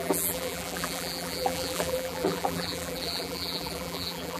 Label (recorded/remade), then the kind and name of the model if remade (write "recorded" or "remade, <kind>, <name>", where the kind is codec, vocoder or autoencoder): remade, vocoder, BigVGAN v2